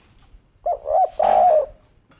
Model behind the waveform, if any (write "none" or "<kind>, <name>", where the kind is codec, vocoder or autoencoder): none